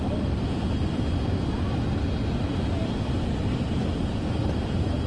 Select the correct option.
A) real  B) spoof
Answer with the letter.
A